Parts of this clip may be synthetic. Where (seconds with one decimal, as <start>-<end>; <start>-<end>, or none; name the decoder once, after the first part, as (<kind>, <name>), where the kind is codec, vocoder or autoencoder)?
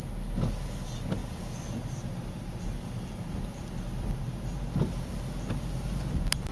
none